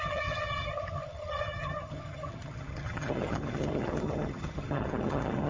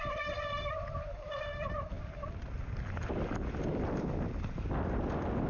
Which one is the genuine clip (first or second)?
second